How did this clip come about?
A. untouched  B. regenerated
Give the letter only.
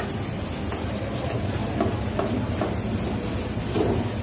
A